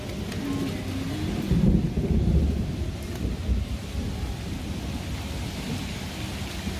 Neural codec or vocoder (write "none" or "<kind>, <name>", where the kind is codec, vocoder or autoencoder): none